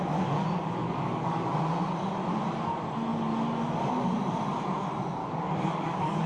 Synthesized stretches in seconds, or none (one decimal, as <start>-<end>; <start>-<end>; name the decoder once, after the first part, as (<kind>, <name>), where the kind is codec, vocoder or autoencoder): 0.8-1.6 (codec, DAC); 5.2-6.3